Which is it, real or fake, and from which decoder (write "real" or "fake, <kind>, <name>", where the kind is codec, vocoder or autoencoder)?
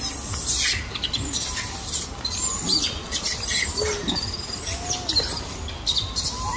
real